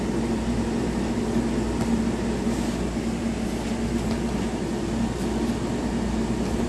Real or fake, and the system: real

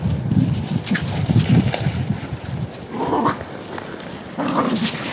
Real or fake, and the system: real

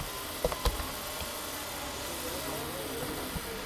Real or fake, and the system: real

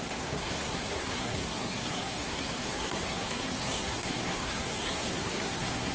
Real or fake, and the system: fake, codec, SNAC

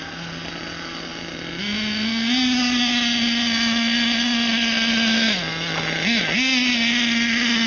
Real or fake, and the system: real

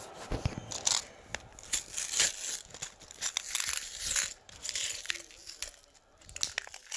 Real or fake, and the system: real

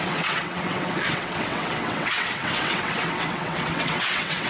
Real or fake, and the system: fake, vocoder, WaveNeXt